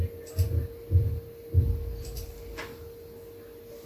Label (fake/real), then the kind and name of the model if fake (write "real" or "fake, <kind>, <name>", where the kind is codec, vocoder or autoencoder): real